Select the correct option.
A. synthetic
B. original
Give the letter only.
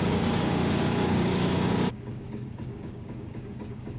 A